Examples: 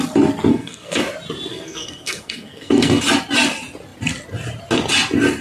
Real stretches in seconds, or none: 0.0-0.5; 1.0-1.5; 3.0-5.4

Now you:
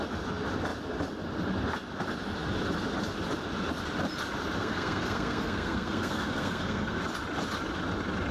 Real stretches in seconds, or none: 0.0-4.6; 7.0-8.3

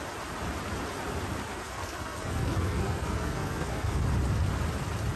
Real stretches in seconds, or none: 0.0-1.5; 4.0-5.2

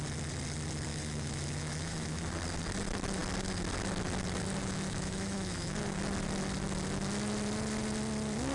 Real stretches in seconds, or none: 0.0-0.9; 2.4-4.6; 6.0-8.5

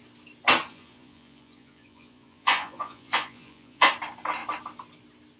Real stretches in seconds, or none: 0.0-0.7; 3.9-5.4

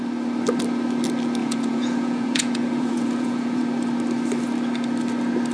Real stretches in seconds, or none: 0.0-1.4; 3.6-5.5

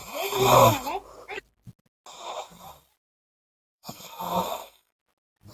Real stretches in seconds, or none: 0.0-3.3; 5.0-5.5

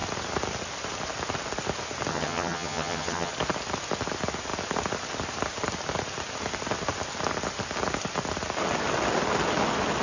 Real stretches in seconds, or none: 0.0-2.1; 3.3-10.0